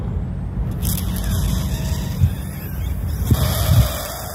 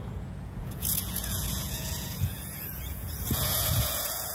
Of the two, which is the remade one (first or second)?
second